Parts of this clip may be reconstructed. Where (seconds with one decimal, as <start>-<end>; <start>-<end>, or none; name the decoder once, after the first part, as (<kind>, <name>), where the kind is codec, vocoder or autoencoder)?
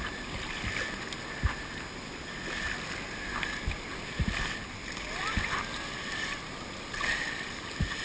none